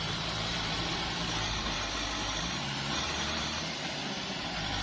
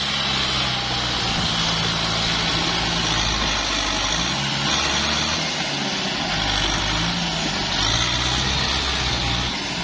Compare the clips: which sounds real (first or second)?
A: second